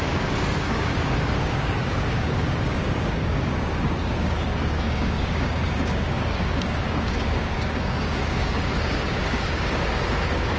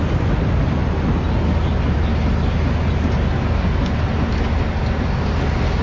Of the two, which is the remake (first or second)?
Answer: first